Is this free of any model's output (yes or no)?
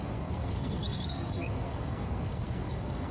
no